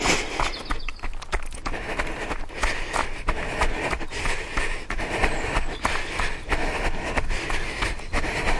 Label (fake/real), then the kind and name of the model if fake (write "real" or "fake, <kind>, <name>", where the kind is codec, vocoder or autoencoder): real